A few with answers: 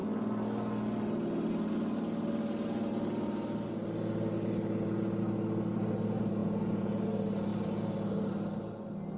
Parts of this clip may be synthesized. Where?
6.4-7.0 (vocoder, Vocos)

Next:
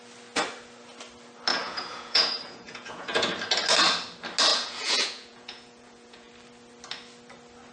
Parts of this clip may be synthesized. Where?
1.5-3.3 (vocoder, Vocos); 4.5-6.3

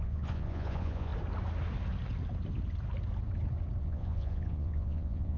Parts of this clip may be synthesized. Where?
0.0-1.1 (vocoder, Vocos); 3.8-5.4

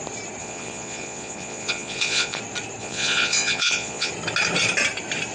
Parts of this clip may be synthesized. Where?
0.4-2.4 (vocoder, Vocos); 2.8-4.1

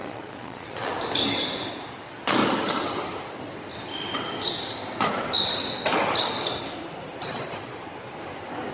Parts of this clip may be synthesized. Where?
0.0-0.9 (vocoder, Vocos)

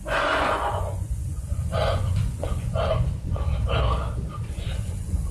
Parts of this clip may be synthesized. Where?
0.0-3.5 (vocoder, Vocos); 4.5-5.3

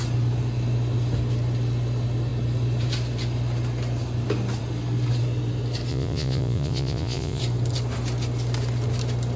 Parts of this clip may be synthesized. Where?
5.9-7.4 (vocoder, Vocos)

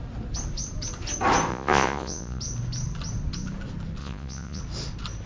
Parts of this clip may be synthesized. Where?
1.5-2.4 (vocoder, Vocos); 4.0-4.6